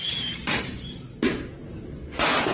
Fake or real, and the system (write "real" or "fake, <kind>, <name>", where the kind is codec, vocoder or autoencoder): real